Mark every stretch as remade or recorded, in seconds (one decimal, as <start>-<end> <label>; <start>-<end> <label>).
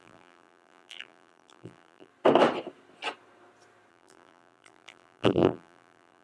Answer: 0.0-2.1 remade; 2.1-3.9 recorded; 3.9-6.2 remade